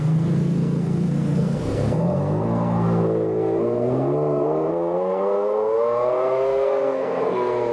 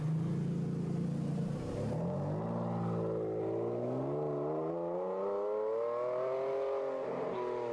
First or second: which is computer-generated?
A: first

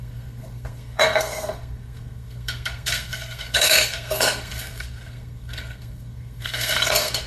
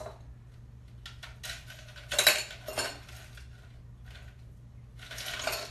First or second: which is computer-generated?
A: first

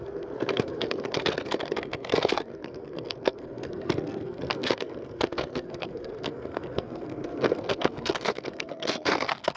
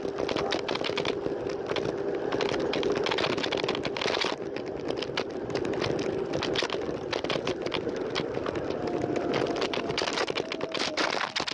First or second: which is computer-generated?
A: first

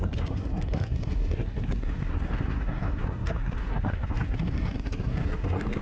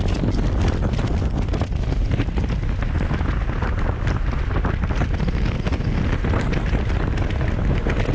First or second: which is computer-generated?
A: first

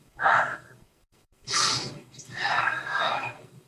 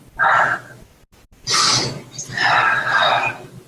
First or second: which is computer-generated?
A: first